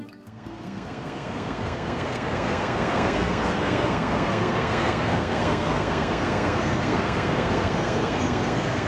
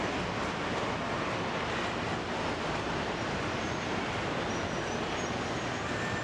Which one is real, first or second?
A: second